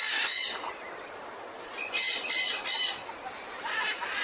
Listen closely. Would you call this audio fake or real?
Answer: real